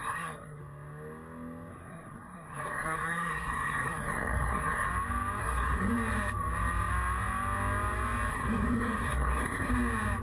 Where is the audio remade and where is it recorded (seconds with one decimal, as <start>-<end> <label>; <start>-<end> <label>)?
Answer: 0.0-0.6 remade; 0.6-1.7 recorded; 1.7-4.9 remade; 4.9-5.4 recorded; 5.4-5.9 remade; 5.9-8.3 recorded; 8.3-9.7 remade; 9.7-10.2 recorded